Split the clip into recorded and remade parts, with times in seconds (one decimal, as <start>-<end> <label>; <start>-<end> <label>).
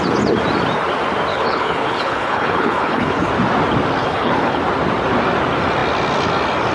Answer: 0.0-1.3 recorded; 1.3-3.3 remade; 3.3-4.0 recorded; 4.0-4.6 remade; 4.6-6.7 recorded